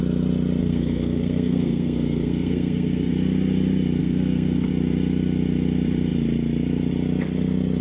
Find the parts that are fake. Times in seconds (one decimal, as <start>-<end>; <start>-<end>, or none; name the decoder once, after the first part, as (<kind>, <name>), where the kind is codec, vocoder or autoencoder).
0.6-3.1 (codec, SNAC); 4.0-4.7